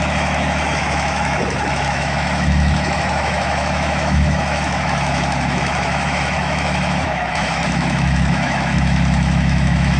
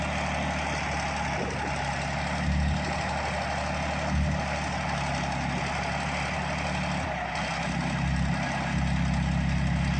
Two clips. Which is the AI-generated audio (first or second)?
first